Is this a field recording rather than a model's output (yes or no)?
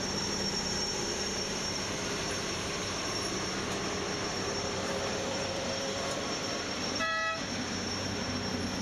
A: no